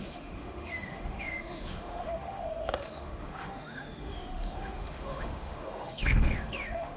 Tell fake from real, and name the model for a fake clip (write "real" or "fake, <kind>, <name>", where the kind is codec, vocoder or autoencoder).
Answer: fake, autoencoder, DAC-VAE